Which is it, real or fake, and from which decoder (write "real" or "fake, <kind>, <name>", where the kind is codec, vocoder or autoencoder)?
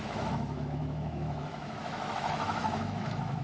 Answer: fake, autoencoder, DAC-VAE